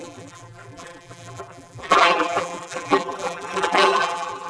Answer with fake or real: fake